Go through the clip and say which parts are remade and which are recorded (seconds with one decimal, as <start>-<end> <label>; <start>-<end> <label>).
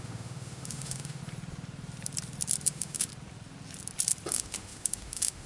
0.0-1.2 remade; 1.2-2.7 recorded; 2.7-3.1 remade; 3.1-4.3 recorded; 4.3-5.5 remade